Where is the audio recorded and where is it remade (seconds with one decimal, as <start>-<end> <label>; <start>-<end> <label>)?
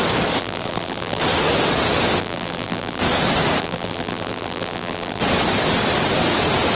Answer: 0.0-0.4 recorded; 0.4-1.2 remade; 1.2-2.2 recorded; 2.2-3.0 remade; 3.0-3.6 recorded; 3.6-5.2 remade; 5.2-6.7 recorded